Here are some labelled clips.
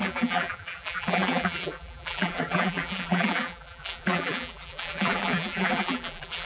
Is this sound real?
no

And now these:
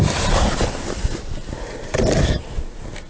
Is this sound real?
yes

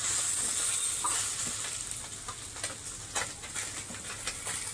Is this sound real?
yes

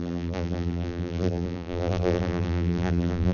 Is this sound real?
no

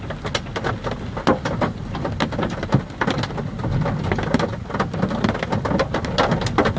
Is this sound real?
yes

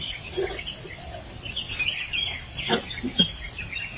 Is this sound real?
yes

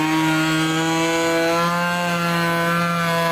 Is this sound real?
yes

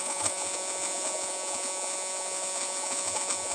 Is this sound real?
no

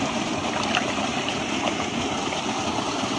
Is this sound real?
yes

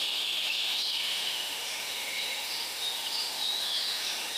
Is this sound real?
no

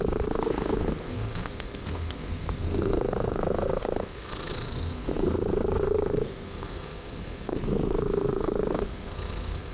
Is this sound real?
no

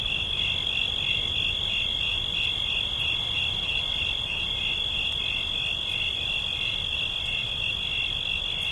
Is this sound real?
yes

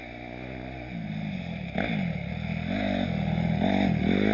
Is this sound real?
yes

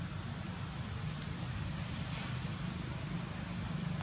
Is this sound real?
no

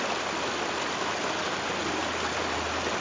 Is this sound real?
yes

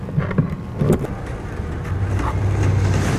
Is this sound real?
yes